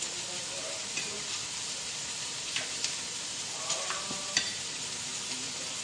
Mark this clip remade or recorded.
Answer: remade